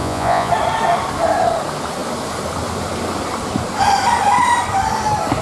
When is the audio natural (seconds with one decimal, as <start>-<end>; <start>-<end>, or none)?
0.5-5.4